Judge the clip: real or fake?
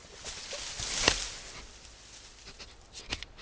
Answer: real